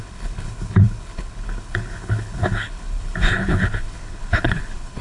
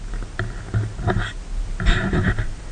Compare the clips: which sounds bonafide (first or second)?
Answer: second